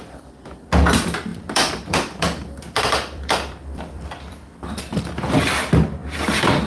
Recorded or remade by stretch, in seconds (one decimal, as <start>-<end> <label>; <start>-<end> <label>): 0.0-1.3 recorded; 1.3-4.8 remade; 4.8-6.0 recorded; 6.0-6.7 remade